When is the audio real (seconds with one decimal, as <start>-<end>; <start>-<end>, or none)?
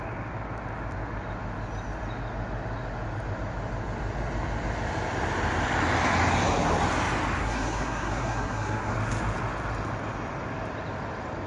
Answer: 0.0-7.4; 8.9-11.5